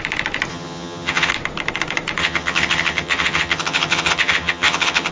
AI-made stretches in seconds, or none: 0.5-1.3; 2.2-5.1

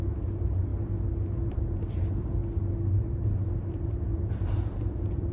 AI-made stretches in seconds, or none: 0.0-0.7; 1.5-2.4; 2.9-5.3